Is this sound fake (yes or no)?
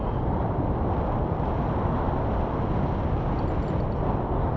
no